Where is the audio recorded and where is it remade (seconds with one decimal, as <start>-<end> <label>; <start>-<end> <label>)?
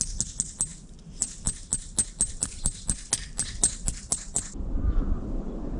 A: 0.0-5.8 recorded